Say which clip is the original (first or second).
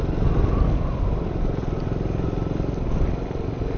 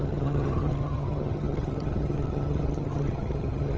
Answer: first